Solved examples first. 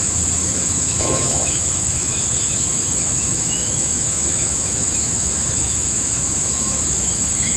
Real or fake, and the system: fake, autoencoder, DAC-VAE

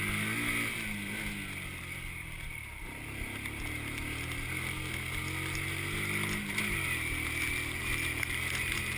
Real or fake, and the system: real